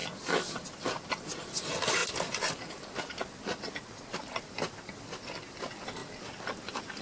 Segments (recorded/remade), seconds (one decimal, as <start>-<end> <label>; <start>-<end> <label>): 0.0-7.0 recorded